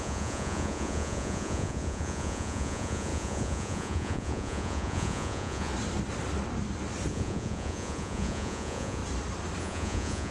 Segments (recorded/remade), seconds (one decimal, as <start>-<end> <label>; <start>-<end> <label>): 0.0-5.7 remade; 5.7-7.1 recorded; 7.1-9.0 remade; 9.0-9.6 recorded; 9.6-10.3 remade